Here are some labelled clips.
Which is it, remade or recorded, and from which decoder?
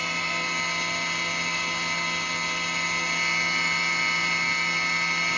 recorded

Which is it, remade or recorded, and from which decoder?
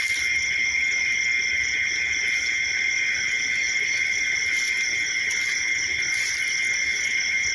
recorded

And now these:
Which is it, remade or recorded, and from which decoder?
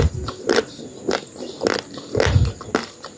recorded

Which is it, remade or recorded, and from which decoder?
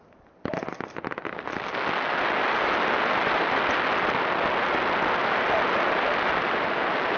recorded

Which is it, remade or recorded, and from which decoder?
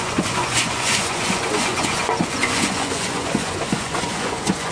remade, vocoder, Vocos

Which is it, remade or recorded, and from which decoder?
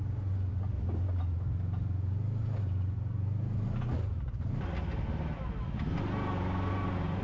recorded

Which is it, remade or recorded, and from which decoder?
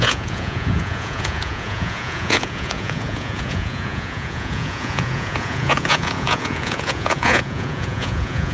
remade, vocoder, Vocos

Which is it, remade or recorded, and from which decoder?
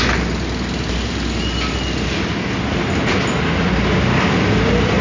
recorded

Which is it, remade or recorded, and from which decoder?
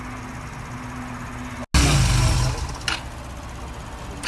recorded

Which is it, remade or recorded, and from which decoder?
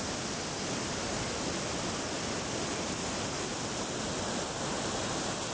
recorded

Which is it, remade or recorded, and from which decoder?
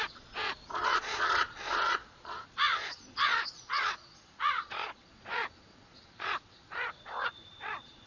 remade, vocoder, Vocos